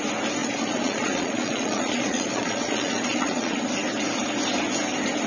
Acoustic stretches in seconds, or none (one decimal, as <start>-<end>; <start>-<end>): 0.0-0.4; 3.6-5.3